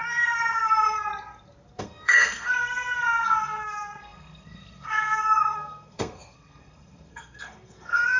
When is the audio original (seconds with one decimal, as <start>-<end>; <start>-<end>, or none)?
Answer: 1.1-1.8